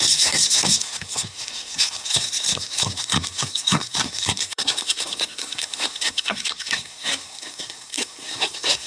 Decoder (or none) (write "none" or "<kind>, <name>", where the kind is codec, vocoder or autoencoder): codec, SNAC